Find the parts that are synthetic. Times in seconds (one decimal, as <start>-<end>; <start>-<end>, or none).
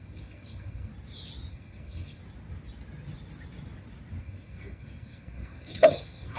0.0-0.9; 1.5-2.2; 4.2-6.4